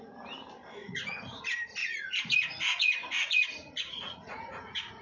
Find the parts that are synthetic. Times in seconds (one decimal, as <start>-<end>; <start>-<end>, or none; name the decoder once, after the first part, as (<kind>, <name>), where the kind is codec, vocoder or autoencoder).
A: 0.8-1.4 (vocoder, Vocos); 1.8-5.0